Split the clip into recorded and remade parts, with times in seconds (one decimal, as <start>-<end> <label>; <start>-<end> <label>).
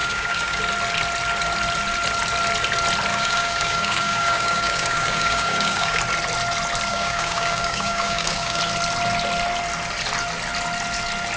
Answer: 0.0-0.6 remade; 0.6-3.1 recorded; 3.1-6.0 remade; 6.0-6.9 recorded; 6.9-8.6 remade; 8.6-11.4 recorded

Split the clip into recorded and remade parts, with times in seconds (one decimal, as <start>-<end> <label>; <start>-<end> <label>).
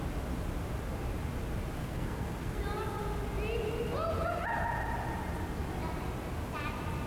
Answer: 0.0-1.8 recorded; 1.8-2.6 remade; 2.6-7.1 recorded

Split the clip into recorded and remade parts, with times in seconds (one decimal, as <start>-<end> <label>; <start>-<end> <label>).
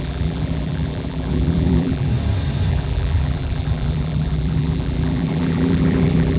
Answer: 0.0-2.1 remade; 2.1-2.7 recorded; 2.7-6.4 remade